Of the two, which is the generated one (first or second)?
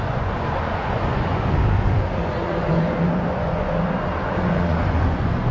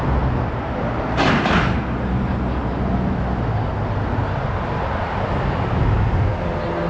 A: first